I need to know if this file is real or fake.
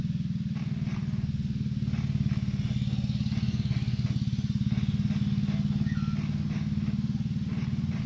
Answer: real